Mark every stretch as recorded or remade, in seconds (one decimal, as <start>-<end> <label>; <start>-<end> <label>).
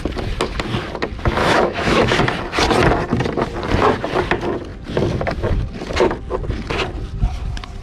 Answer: 0.0-1.4 recorded; 1.4-2.2 remade; 2.2-7.8 recorded